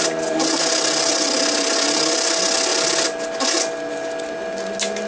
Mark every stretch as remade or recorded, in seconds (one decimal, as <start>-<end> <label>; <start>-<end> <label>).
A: 0.0-5.1 recorded